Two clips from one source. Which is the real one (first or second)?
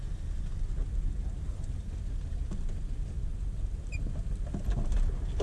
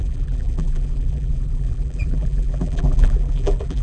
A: first